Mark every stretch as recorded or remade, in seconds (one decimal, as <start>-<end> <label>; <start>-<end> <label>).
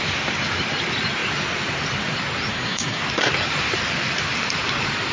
0.0-2.5 recorded; 2.5-3.0 remade; 3.0-5.1 recorded